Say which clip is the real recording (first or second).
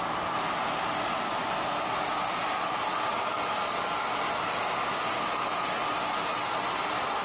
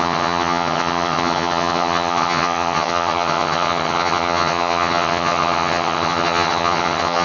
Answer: first